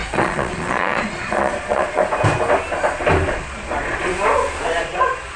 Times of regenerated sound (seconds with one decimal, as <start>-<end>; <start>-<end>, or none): 0.0-2.0; 3.3-4.1; 4.8-5.4